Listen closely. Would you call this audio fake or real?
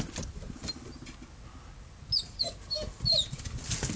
real